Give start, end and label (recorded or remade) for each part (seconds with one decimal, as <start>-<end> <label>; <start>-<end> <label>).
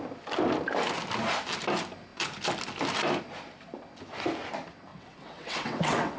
0.0-4.9 recorded; 4.9-6.2 remade